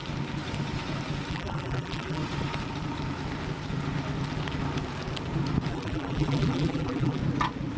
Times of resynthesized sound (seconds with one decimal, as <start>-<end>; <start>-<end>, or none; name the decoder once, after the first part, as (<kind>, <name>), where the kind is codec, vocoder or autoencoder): 1.3-2.2 (vocoder, BigVGAN v2); 5.7-7.2